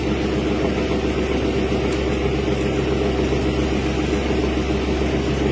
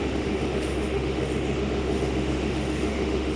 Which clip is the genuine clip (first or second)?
first